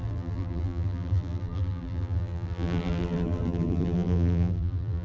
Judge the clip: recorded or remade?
remade